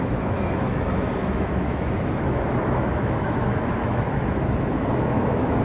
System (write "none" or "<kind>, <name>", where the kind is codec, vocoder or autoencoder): autoencoder, DAC-VAE